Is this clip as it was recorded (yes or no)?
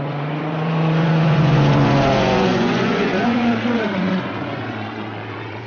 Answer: no